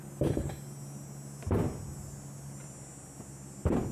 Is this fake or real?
real